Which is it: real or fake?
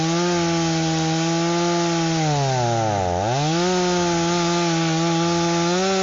real